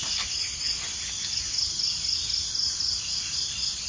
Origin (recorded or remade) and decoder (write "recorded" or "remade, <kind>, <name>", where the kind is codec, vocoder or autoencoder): recorded